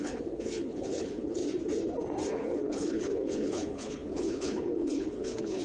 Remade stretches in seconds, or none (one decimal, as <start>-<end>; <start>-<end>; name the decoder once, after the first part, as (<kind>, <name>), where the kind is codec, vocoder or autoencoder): 0.0-1.4 (codec, HILCodec); 2.3-5.6